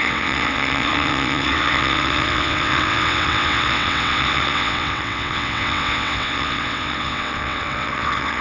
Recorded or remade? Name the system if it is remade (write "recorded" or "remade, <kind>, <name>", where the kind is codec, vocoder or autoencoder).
remade, vocoder, WaveNeXt